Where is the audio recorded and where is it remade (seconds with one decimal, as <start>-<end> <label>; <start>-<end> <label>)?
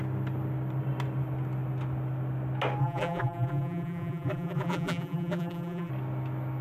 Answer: 0.0-2.8 recorded; 2.8-5.9 remade; 5.9-6.6 recorded